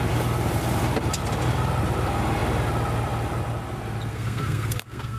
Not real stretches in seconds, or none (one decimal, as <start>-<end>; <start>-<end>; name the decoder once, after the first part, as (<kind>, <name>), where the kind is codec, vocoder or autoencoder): 4.1-5.2 (codec, SNAC)

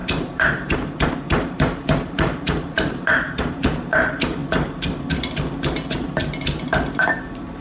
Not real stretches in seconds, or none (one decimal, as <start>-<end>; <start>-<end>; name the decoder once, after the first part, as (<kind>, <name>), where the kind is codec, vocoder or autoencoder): 0.0-4.4 (vocoder, BigVGAN v2); 7.1-7.6

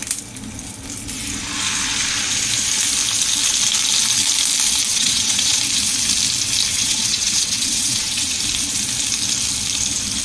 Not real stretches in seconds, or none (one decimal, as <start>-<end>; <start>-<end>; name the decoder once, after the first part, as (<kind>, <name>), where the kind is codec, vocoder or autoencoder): 4.9-5.6 (vocoder, WaveNeXt); 6.7-8.4